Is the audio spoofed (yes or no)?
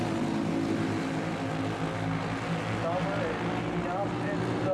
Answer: no